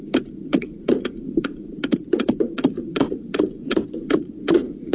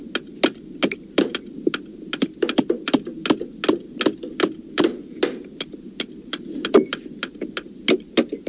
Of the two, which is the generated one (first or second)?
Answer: first